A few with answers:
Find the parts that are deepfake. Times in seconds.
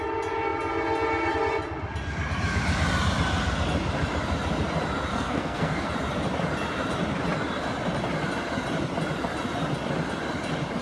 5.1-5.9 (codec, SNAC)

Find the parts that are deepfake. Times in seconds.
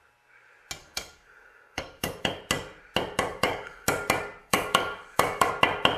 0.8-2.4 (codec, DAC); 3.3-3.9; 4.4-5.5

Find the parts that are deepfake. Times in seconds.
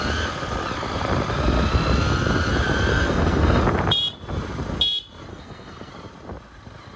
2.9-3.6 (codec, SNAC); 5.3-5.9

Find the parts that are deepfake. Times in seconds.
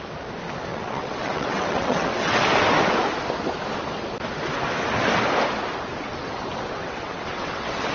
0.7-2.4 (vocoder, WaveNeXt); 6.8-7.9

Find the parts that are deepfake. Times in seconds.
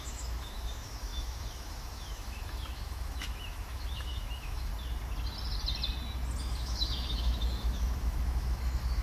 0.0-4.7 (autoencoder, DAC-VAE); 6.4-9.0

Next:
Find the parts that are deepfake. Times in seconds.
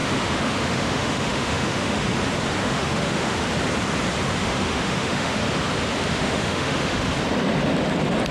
0.0-2.1 (autoencoder, DAC-VAE); 2.6-3.4; 4.4-5.4; 6.1-7.1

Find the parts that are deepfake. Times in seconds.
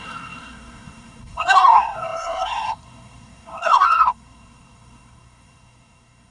0.0-6.3 (codec, SNAC)